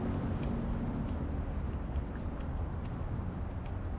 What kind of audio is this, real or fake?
real